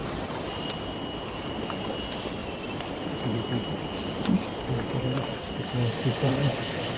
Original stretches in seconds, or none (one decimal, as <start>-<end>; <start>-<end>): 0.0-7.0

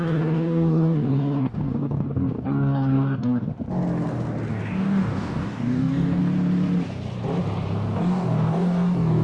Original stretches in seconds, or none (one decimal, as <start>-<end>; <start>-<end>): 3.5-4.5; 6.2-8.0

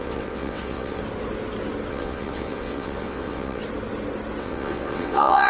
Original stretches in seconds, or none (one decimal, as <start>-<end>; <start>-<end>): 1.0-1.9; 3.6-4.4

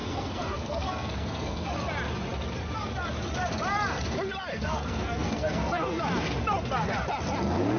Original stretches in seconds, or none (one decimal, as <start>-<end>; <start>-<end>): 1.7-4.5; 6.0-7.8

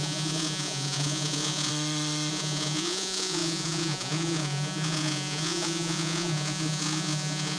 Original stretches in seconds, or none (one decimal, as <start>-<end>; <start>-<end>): 1.7-2.3